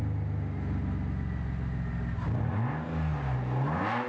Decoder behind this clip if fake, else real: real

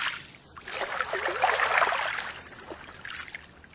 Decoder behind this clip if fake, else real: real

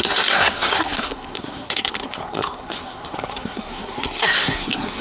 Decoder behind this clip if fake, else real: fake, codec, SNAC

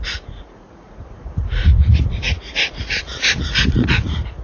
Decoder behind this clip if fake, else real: fake, vocoder, Vocos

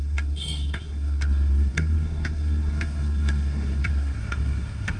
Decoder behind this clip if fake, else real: fake, codec, SNAC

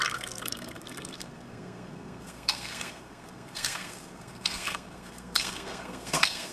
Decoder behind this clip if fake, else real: fake, codec, SNAC